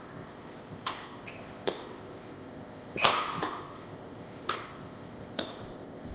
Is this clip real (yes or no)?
no